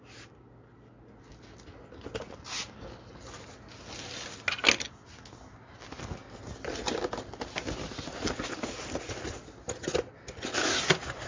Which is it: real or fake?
real